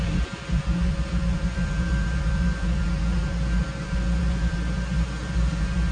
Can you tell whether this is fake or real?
real